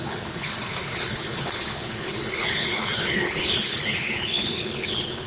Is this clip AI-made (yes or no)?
yes